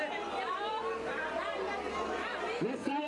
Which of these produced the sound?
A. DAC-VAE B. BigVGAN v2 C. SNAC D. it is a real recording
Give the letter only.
D